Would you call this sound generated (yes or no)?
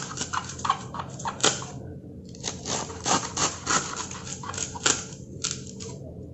yes